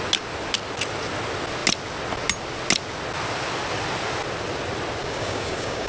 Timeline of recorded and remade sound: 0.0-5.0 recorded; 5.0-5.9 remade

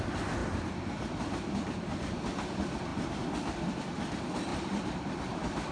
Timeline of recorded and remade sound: 0.0-0.4 recorded; 0.4-1.1 remade; 1.1-2.9 recorded; 2.9-3.7 remade; 3.7-4.5 recorded; 4.5-5.7 remade

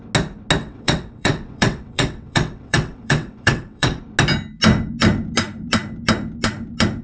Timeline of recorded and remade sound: 0.0-0.6 recorded; 0.6-4.0 remade; 4.0-7.0 recorded